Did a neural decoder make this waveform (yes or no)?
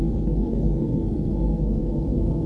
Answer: yes